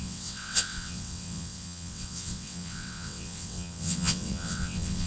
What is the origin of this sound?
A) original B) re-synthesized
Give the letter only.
B